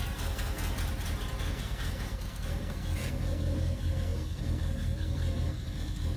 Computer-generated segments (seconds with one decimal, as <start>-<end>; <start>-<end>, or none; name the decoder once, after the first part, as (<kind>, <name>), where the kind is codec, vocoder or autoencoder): 0.0-0.8 (codec, SNAC); 1.4-6.2